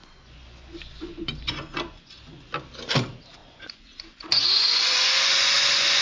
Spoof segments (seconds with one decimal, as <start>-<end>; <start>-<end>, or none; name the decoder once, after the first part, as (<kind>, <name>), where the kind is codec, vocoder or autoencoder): 0.0-2.5 (vocoder, Vocos); 3.4-6.0